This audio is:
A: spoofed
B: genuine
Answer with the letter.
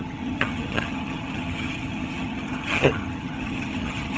A